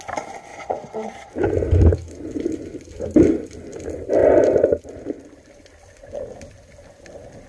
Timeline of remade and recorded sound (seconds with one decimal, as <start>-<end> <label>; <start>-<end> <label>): 0.0-0.5 recorded; 0.5-1.3 remade; 1.3-7.5 recorded